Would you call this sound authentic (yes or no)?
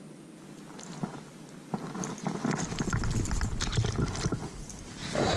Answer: yes